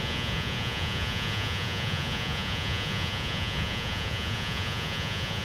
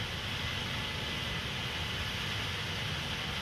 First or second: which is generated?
first